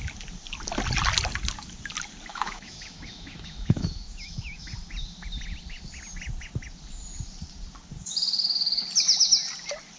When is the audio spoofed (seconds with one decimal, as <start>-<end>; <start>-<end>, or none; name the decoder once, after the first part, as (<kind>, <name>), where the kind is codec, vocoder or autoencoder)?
2.3-4.7 (autoencoder, DAC-VAE)